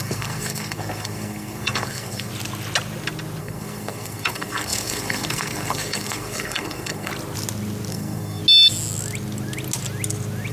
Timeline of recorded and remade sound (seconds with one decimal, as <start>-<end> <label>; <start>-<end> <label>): 0.0-2.3 remade; 2.3-3.4 recorded; 3.4-7.1 remade; 7.1-7.9 recorded; 7.9-8.4 remade; 8.4-10.5 recorded